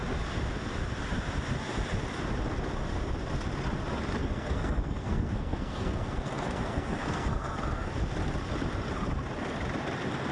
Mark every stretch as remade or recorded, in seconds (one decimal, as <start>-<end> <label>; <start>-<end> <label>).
0.0-4.2 recorded; 4.2-7.9 remade; 7.9-10.3 recorded